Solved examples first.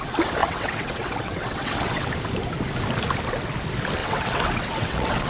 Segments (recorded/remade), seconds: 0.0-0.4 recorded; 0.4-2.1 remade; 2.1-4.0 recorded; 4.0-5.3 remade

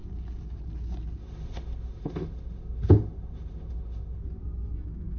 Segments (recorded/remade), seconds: 0.0-1.2 recorded; 1.2-4.2 remade; 4.2-5.2 recorded

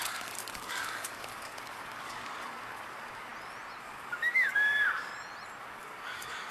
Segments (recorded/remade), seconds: 0.0-3.3 remade; 3.3-3.8 recorded; 3.8-5.1 remade; 5.1-5.6 recorded; 5.6-6.5 remade

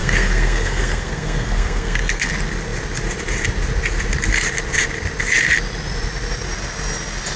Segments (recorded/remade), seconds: 0.0-2.3 remade; 2.3-7.4 recorded

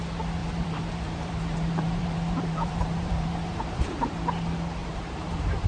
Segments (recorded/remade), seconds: 0.0-0.4 recorded; 0.4-3.8 remade; 3.8-4.8 recorded; 4.8-5.7 remade

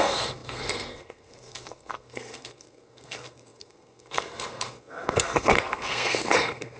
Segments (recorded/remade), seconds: 0.0-6.8 remade

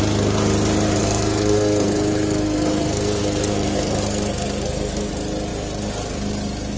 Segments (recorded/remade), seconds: 0.0-1.0 recorded; 1.0-5.1 remade; 5.1-6.8 recorded